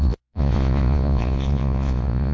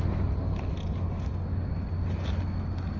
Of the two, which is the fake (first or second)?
first